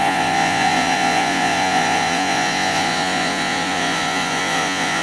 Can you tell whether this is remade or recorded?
remade